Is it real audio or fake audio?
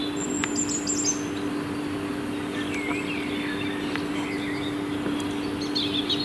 real